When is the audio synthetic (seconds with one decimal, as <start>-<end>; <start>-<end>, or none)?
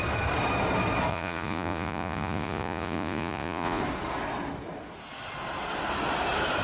1.1-3.8